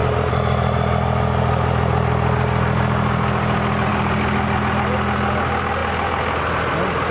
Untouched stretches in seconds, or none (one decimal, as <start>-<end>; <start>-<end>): 0.0-7.1

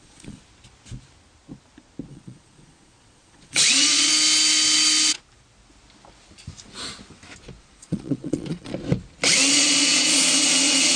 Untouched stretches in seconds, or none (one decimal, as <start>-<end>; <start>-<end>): 0.4-2.1; 4.1-7.6; 8.7-9.5

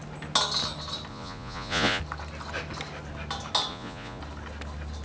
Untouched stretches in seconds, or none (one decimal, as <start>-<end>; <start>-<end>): 0.0-1.1; 2.0-3.7; 4.2-5.0

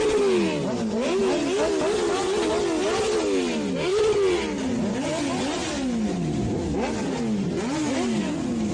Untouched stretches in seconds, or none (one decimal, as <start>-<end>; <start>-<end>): 0.0-8.7

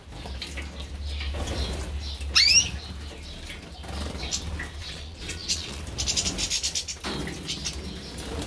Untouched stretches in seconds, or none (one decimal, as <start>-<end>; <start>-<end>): 0.0-4.8; 5.8-8.5

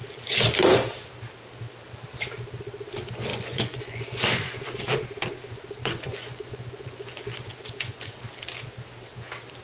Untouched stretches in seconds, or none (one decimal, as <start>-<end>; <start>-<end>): 0.0-3.3; 4.8-5.8; 8.2-9.6